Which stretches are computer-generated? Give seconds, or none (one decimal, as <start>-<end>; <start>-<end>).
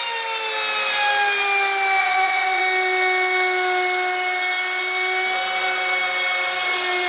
2.0-2.6